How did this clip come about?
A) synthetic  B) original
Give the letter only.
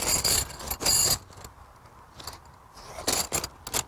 B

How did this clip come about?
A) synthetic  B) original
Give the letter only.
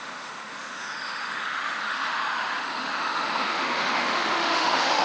A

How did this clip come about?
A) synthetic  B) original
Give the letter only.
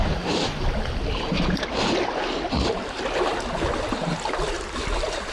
B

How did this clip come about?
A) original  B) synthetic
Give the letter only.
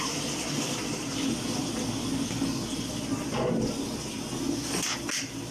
A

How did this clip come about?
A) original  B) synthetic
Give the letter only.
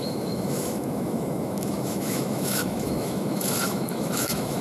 B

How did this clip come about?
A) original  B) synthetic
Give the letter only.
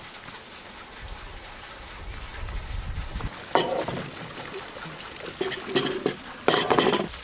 A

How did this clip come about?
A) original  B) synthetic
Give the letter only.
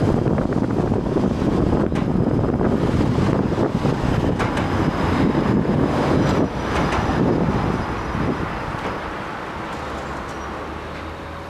A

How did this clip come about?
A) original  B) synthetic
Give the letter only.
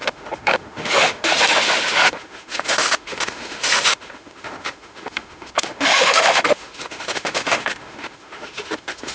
B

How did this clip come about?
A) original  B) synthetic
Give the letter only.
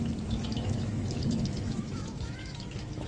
B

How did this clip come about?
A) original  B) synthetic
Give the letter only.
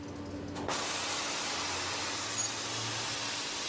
A